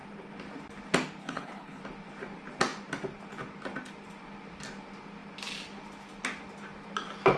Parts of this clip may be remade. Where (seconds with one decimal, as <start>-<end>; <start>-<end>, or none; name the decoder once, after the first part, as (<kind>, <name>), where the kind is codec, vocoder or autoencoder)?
1.2-1.8 (codec, HILCodec)